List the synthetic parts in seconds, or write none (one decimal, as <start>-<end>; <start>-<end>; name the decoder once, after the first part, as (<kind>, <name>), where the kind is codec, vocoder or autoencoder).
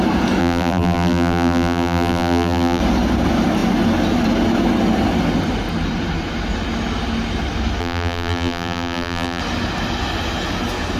0.4-2.8 (vocoder, BigVGAN v2); 7.8-9.4